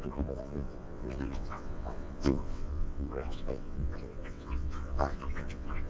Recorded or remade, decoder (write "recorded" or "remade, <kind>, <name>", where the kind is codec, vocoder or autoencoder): remade, vocoder, WaveNeXt